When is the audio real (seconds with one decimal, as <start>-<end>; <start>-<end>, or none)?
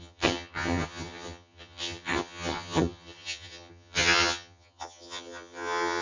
none